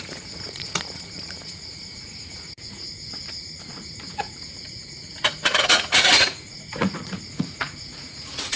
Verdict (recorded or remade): remade